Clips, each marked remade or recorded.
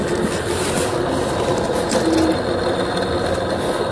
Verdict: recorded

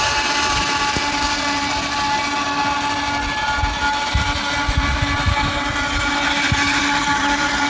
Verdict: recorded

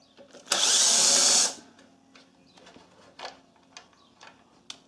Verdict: recorded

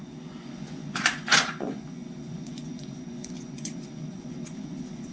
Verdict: remade